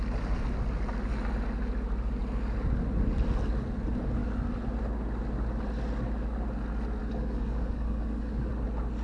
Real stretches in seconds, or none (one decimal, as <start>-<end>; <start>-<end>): 0.0-7.0; 8.5-9.0